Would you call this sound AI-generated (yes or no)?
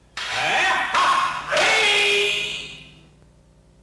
no